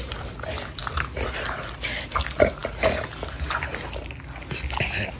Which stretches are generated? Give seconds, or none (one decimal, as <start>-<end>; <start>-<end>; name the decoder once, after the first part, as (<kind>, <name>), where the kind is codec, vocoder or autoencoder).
none

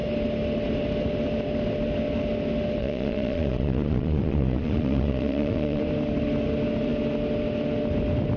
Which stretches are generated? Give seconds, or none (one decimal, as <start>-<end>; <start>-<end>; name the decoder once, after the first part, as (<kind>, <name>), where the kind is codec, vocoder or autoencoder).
2.8-5.8 (vocoder, Vocos)

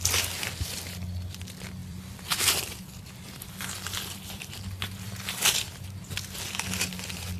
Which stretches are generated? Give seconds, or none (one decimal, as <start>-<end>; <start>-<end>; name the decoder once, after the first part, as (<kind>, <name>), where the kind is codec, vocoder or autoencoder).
1.8-2.8 (vocoder, BigVGAN v2)

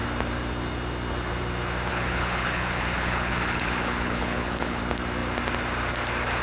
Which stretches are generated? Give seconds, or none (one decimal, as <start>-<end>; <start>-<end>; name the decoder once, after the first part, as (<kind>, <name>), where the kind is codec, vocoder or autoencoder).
1.9-4.8 (codec, HILCodec)

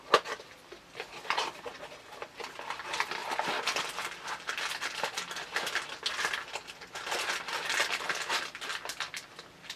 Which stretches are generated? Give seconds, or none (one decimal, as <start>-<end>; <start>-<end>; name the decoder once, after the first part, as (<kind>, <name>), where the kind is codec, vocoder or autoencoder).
none